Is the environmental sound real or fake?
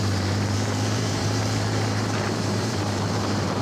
fake